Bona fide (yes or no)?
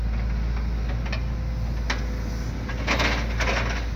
yes